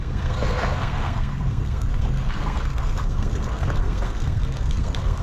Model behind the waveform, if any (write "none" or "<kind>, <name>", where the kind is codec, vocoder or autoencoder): codec, SNAC